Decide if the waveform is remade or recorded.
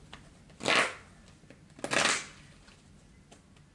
recorded